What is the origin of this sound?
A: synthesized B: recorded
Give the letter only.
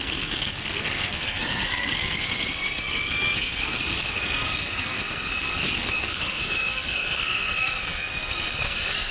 A